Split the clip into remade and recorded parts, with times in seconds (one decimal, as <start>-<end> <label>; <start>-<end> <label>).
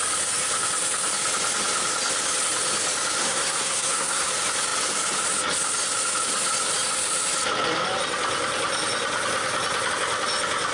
0.0-3.2 recorded; 3.2-4.3 remade; 4.3-10.7 recorded